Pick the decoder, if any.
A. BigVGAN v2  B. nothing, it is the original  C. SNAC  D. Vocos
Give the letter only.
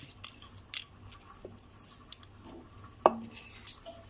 B